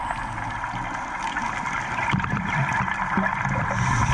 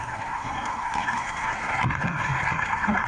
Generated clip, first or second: second